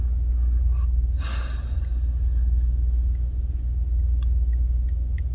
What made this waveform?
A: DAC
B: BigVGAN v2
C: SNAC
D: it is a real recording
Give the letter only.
D